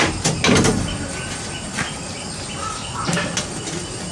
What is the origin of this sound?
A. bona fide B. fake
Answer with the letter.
A